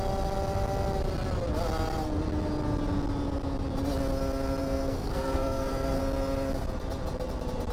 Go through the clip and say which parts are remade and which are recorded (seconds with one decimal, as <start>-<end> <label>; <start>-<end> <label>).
0.0-4.6 recorded; 4.6-6.0 remade; 6.0-7.7 recorded